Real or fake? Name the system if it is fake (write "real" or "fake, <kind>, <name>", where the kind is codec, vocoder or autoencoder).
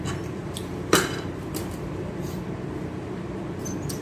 fake, vocoder, BigVGAN v2